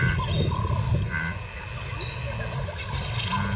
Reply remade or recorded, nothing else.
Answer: recorded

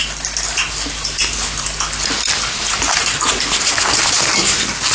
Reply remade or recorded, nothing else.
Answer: recorded